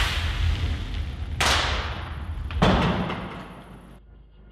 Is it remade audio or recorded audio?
recorded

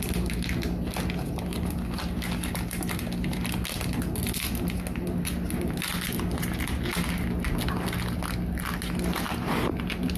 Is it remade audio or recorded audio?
recorded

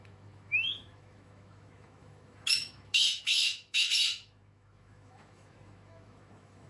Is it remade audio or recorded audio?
remade